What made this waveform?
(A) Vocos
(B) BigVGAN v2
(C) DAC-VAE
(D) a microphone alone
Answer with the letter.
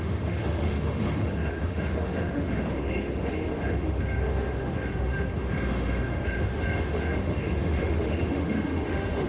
C